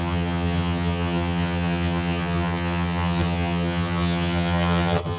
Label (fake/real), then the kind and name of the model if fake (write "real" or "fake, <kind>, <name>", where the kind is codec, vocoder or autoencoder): fake, vocoder, HiFi-GAN